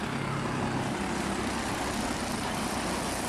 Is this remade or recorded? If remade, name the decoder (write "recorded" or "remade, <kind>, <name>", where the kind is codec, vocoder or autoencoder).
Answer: recorded